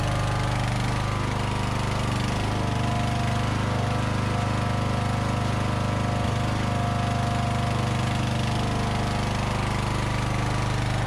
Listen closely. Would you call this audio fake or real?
real